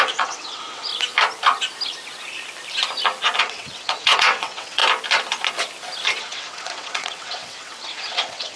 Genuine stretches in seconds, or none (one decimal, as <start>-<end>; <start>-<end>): 0.9-3.4; 4.8-6.2